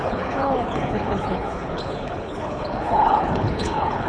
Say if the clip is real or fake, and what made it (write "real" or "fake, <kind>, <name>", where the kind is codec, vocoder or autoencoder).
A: fake, codec, HILCodec